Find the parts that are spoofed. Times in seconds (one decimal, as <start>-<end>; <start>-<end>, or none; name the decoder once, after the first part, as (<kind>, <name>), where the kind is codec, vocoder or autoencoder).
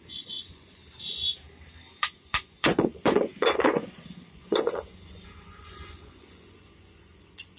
0.0-0.8 (vocoder, Vocos); 2.0-7.6